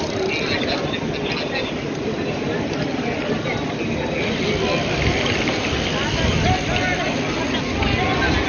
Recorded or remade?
recorded